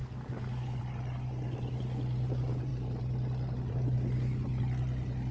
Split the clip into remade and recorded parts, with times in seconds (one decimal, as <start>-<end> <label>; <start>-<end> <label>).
0.0-0.8 remade; 0.8-5.3 recorded